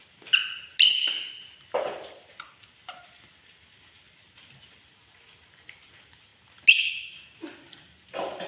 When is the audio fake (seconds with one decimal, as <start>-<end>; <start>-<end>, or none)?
none